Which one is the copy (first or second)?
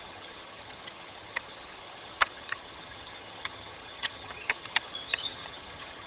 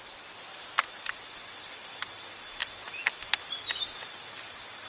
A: first